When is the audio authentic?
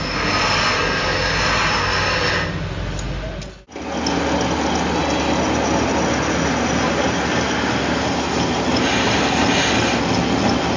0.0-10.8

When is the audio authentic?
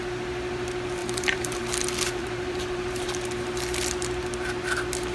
0.0-1.0; 1.6-2.2; 3.0-5.1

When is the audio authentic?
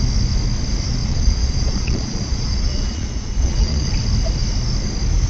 0.0-1.0; 3.9-5.3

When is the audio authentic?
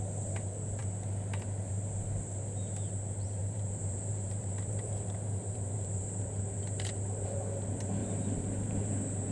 0.0-3.4; 6.4-8.0; 8.9-9.3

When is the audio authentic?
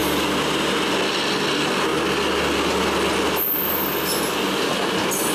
0.0-5.3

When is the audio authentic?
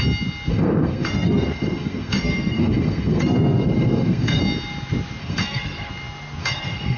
0.0-0.5; 4.4-5.2; 5.9-6.4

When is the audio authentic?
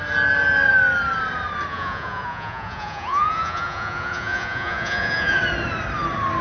0.0-1.7; 5.4-6.4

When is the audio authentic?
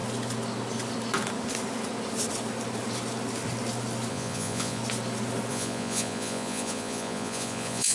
0.0-4.1; 4.8-5.5